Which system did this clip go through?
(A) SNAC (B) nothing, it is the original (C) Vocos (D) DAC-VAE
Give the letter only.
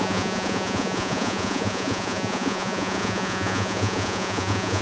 C